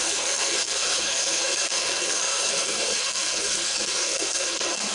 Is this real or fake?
fake